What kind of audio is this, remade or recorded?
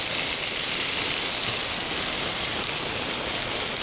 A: recorded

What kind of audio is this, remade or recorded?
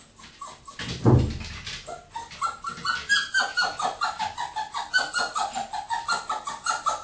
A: recorded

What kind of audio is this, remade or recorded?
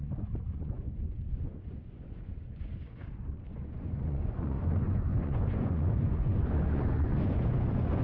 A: remade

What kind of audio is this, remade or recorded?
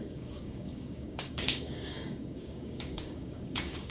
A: remade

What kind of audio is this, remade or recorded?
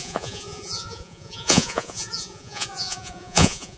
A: remade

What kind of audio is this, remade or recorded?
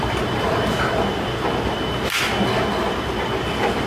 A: recorded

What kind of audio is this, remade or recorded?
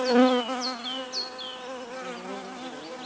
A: recorded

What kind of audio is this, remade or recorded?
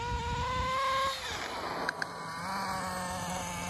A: recorded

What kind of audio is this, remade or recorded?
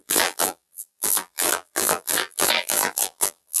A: remade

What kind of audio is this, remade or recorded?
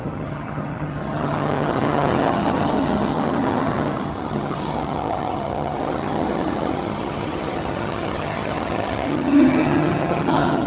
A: remade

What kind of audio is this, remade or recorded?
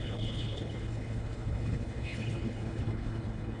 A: remade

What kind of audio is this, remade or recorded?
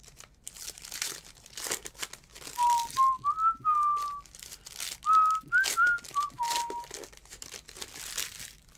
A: recorded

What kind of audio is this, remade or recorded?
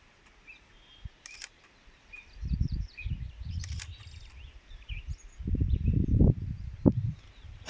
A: remade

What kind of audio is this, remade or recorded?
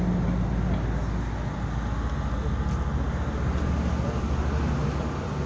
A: recorded